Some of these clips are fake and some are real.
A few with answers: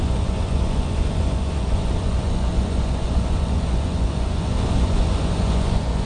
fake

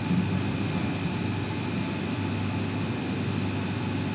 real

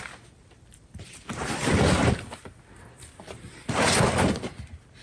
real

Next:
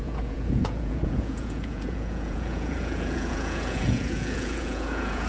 fake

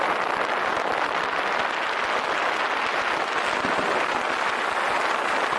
real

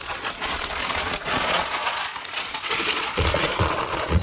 fake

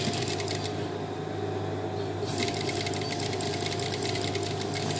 real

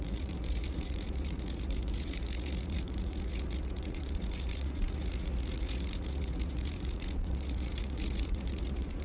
fake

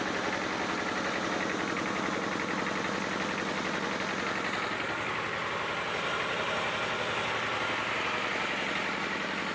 real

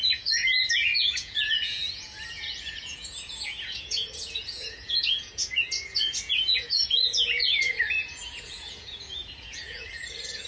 fake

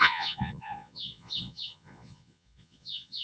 fake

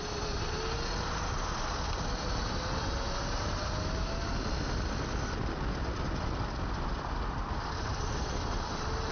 real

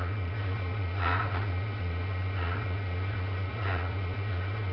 fake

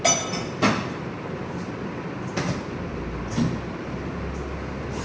real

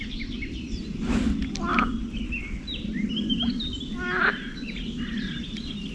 real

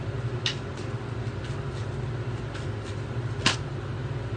real